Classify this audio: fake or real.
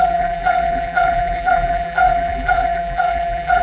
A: fake